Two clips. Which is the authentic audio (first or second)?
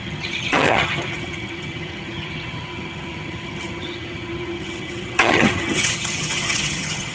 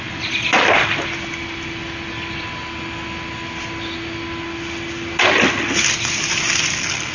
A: second